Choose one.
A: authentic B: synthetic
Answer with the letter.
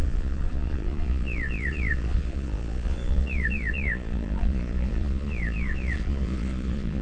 B